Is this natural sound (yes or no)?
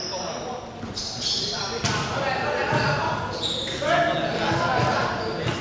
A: yes